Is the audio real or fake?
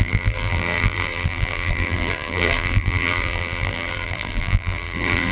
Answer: fake